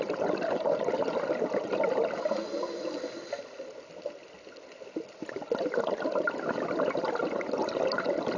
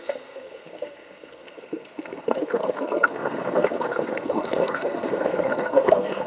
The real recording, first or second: first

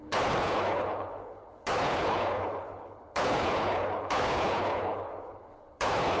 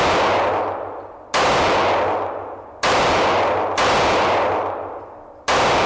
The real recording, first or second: second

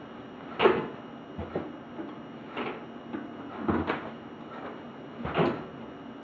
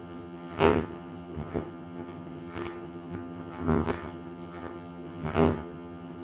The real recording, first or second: first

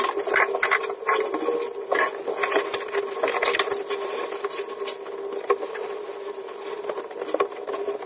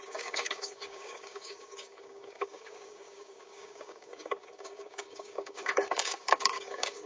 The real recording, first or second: first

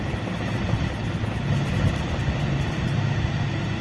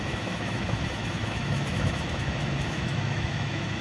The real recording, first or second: first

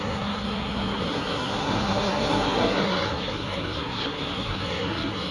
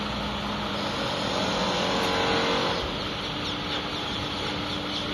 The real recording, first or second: second